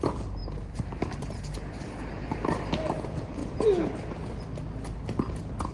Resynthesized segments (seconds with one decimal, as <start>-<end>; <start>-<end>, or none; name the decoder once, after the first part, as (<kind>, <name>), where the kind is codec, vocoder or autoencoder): none